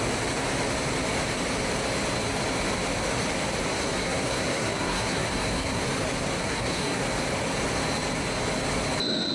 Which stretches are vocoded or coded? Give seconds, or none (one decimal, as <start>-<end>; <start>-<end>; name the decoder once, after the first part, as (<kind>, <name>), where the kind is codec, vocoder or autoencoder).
3.7-5.8 (codec, SNAC); 6.4-7.0